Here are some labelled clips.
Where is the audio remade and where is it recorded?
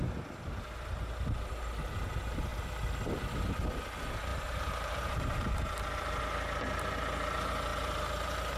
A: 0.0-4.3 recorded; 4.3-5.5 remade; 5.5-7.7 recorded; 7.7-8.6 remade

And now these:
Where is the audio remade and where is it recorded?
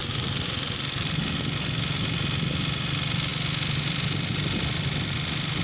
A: 0.0-1.2 remade; 1.2-5.6 recorded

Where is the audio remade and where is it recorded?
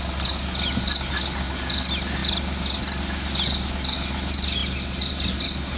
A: 0.0-5.8 recorded